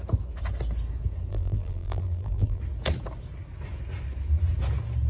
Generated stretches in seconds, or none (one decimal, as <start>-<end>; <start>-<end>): 1.3-2.6